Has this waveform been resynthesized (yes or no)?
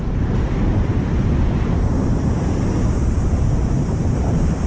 yes